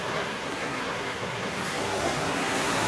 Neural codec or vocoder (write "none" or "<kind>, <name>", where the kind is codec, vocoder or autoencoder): codec, SNAC